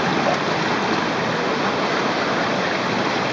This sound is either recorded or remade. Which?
recorded